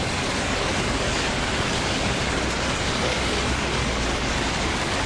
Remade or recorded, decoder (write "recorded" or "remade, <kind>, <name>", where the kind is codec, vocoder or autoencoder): remade, codec, DAC